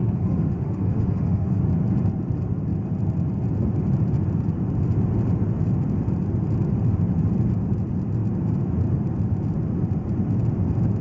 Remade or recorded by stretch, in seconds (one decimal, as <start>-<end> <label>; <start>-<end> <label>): 0.0-1.6 remade; 1.6-11.0 recorded